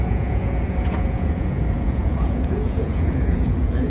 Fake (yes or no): yes